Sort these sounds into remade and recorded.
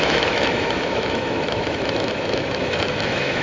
remade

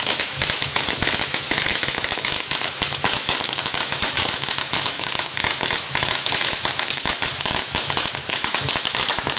remade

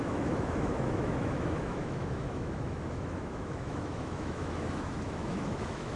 remade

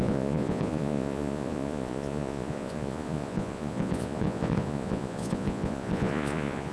remade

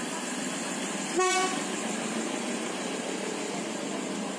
recorded